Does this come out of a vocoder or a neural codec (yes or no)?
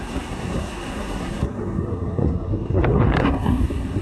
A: yes